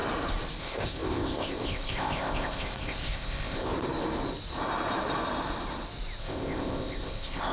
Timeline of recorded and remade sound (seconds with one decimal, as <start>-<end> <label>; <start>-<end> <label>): 0.0-0.6 recorded; 0.6-3.7 remade; 3.7-6.2 recorded; 6.2-7.5 remade